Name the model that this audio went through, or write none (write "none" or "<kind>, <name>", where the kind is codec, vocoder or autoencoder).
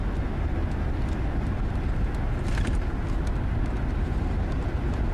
none